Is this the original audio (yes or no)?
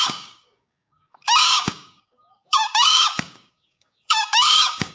no